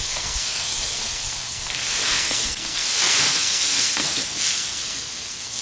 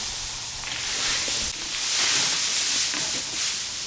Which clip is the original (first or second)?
second